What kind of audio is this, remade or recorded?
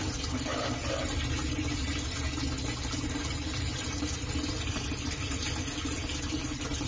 recorded